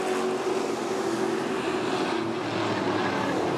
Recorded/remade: recorded